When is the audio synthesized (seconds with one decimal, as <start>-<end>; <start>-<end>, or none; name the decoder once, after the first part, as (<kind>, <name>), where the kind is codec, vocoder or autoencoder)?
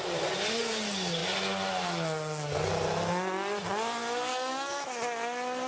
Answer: 4.3-4.9 (autoencoder, DAC-VAE)